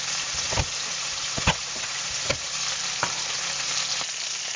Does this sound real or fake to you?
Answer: real